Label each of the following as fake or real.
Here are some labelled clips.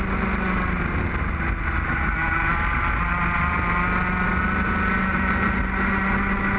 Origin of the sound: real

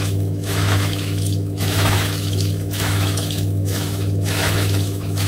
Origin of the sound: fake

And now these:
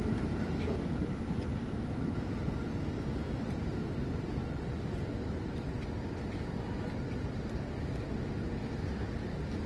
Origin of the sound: real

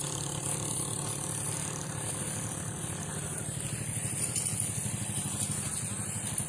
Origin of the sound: real